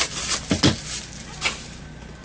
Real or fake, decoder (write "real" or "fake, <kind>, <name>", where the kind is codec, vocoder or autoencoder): real